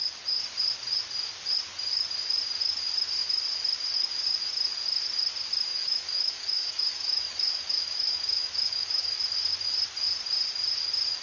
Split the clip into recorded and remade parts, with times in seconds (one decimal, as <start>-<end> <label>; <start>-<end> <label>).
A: 0.0-5.7 recorded; 5.7-9.2 remade; 9.2-11.2 recorded